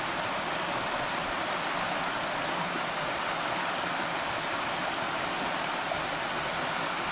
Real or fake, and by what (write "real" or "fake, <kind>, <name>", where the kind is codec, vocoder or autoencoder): real